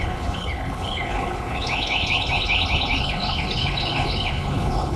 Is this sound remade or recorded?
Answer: remade